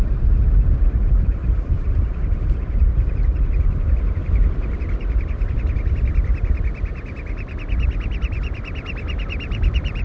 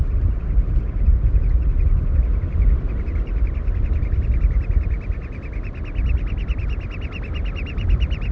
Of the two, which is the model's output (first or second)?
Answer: first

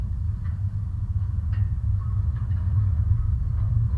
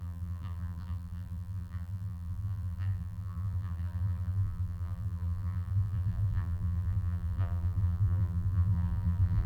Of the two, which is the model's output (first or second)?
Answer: second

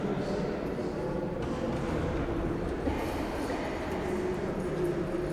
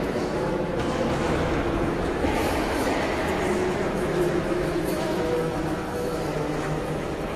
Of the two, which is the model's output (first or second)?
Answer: second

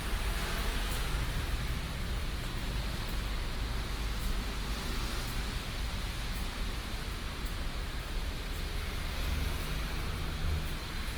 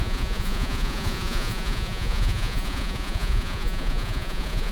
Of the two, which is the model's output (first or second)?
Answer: second